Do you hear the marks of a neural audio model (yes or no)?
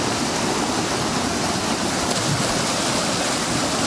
no